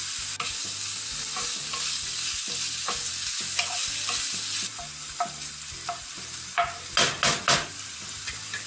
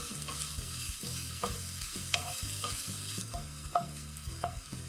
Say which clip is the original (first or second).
first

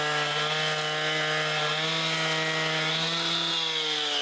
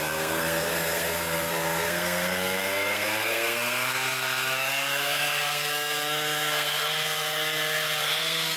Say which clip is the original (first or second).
first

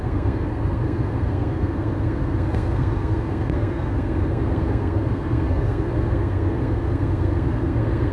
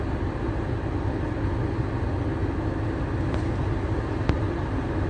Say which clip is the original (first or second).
second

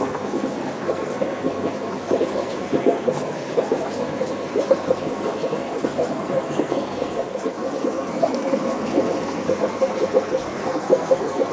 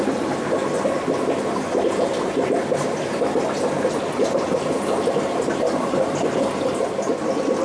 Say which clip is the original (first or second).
second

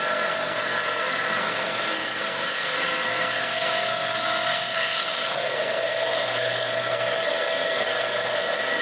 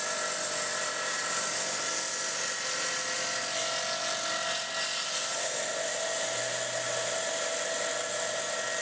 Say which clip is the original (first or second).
second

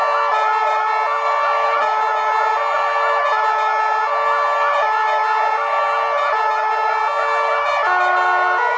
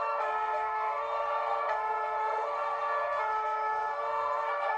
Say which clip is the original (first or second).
first